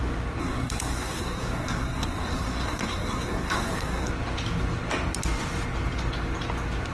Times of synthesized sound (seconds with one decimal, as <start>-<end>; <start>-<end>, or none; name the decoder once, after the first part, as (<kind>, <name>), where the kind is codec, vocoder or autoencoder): 0.4-4.1 (codec, SNAC)